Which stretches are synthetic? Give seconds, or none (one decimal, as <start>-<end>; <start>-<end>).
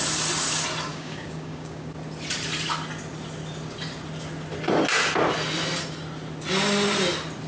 0.9-1.9